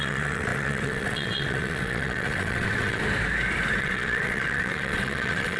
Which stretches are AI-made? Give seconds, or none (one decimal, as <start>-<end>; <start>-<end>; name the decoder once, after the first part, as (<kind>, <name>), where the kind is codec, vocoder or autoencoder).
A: 0.0-3.0 (vocoder, WaveNeXt); 3.8-5.6